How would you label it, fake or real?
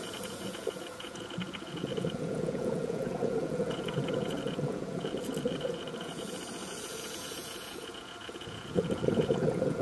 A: fake